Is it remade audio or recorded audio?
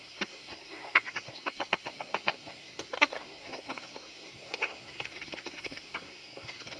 remade